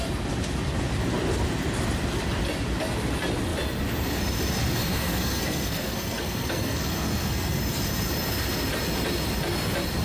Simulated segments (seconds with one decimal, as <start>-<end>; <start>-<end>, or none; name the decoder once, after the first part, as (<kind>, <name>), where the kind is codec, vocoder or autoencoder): 4.9-7.6 (codec, SNAC)